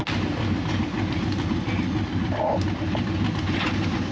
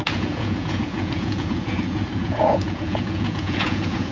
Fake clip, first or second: second